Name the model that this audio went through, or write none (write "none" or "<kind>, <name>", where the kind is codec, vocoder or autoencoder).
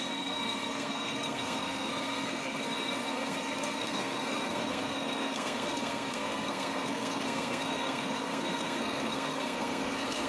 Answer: codec, SNAC